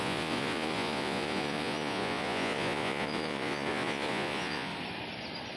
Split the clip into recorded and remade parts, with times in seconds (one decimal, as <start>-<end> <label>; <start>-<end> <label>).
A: 0.0-4.7 remade; 4.7-5.6 recorded